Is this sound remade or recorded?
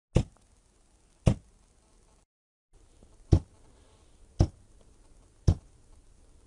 recorded